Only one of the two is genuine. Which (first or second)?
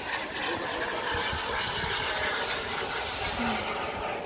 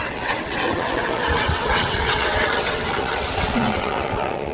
first